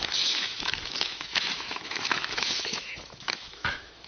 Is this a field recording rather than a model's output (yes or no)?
no